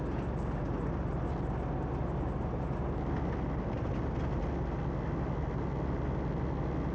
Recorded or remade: recorded